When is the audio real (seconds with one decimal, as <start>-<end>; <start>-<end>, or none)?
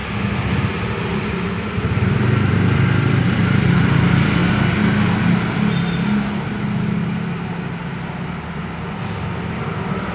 0.0-1.4; 4.4-8.7